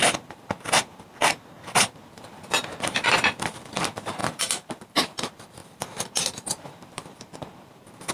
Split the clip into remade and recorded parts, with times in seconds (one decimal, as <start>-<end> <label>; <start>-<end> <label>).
0.0-8.1 remade